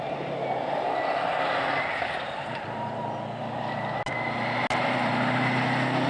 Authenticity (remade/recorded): recorded